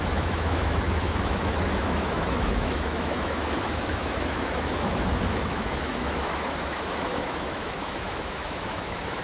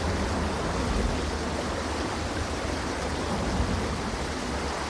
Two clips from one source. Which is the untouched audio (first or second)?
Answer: second